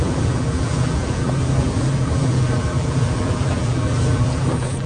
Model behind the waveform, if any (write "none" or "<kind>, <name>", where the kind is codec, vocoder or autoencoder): vocoder, BigVGAN v2